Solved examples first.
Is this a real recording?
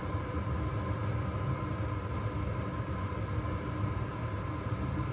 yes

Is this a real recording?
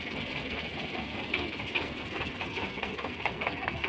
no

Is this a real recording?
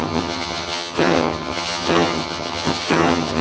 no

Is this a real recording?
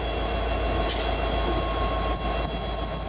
yes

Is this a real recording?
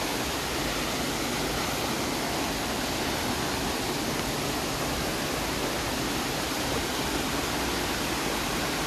yes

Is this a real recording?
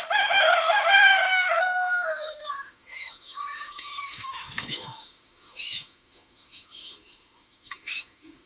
no